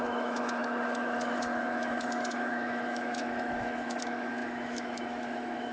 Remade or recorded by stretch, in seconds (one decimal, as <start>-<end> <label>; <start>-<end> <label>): 0.0-5.7 remade